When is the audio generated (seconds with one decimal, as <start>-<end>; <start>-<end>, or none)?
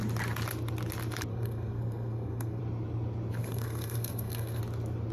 1.3-2.6; 3.4-4.6